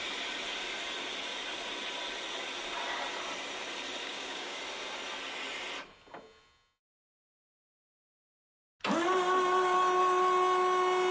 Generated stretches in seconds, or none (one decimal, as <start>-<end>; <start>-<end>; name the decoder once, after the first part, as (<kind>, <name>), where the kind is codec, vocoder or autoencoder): 4.0-4.6 (codec, DAC)